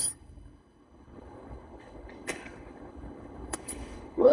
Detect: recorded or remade remade